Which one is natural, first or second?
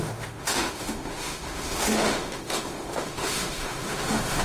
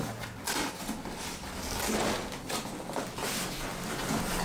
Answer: second